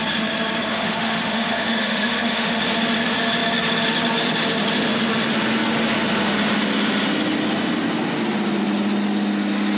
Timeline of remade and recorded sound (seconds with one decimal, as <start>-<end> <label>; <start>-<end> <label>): 0.0-0.7 recorded; 0.7-2.6 remade; 2.6-9.8 recorded